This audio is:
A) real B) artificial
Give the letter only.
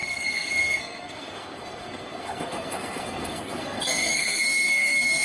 B